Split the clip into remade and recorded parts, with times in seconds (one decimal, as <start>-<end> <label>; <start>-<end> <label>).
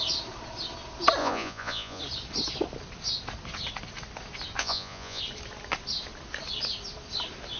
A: 0.0-1.2 recorded; 1.2-2.0 remade; 2.0-4.6 recorded; 4.6-5.2 remade; 5.2-7.6 recorded